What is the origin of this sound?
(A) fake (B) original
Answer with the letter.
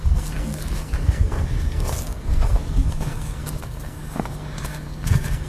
A